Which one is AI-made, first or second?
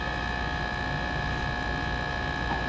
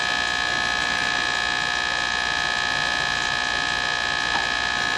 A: first